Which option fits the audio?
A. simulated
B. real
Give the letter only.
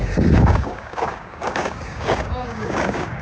A